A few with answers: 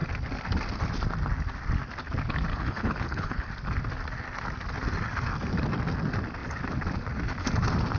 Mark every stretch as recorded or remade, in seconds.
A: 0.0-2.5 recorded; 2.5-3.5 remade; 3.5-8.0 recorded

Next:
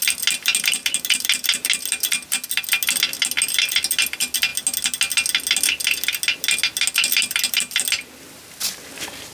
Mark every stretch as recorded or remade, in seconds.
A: 0.0-9.3 recorded

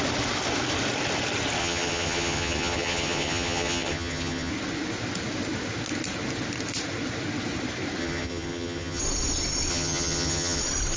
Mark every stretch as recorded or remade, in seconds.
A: 0.0-1.6 recorded; 1.6-4.5 remade; 4.5-8.0 recorded; 8.0-9.0 remade; 9.0-9.7 recorded; 9.7-10.6 remade; 10.6-11.0 recorded

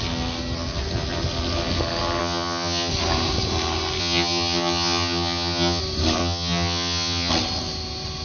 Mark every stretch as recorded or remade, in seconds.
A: 0.0-2.2 recorded; 2.2-2.9 remade; 2.9-4.0 recorded; 4.0-5.8 remade; 5.8-6.2 recorded; 6.2-7.3 remade; 7.3-8.2 recorded

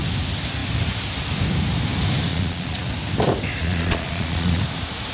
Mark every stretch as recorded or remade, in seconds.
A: 0.0-2.3 recorded; 2.3-2.9 remade; 2.9-3.6 recorded; 3.6-4.6 remade; 4.6-5.1 recorded

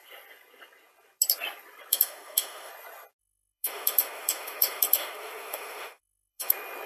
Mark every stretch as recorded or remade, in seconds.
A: 0.0-1.9 recorded; 1.9-2.7 remade; 2.7-3.2 recorded; 3.2-6.5 remade; 6.5-6.9 recorded

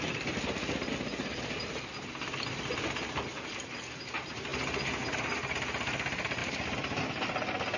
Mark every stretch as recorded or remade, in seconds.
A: 0.0-7.8 recorded